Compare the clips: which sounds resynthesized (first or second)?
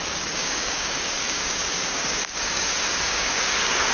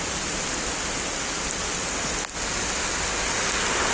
first